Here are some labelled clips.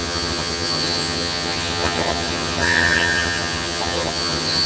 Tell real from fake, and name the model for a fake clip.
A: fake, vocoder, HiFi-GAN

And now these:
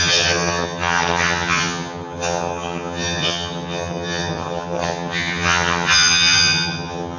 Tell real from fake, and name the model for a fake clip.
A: fake, vocoder, HiFi-GAN